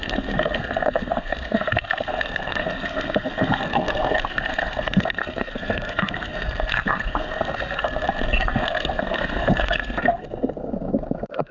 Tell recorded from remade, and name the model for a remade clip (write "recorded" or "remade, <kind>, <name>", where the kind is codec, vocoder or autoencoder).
remade, codec, SNAC